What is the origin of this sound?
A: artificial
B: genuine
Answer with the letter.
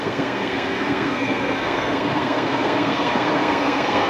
A